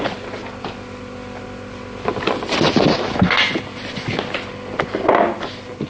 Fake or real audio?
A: real